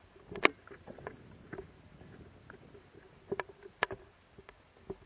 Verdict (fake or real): fake